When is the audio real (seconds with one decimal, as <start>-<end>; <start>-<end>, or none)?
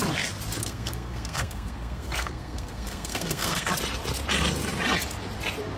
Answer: 0.0-0.6; 3.7-5.8